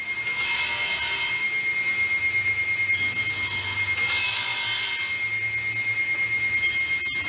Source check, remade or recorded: recorded